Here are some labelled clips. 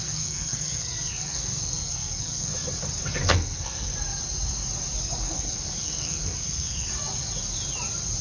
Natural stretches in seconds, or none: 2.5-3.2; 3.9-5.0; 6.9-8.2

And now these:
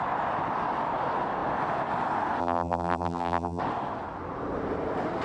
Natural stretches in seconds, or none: 0.0-2.4; 3.6-5.2

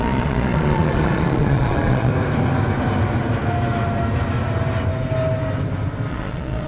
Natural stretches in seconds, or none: 2.1-6.1

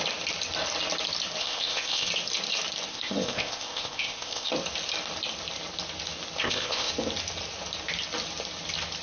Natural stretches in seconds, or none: 0.0-1.4; 2.1-2.9; 4.5-6.4; 6.9-9.0

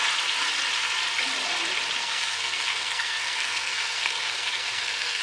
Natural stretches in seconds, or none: 0.0-2.0

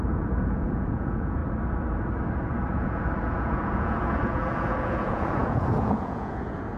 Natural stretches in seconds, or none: 1.4-2.7